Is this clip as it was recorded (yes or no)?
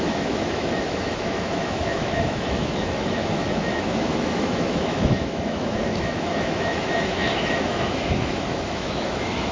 no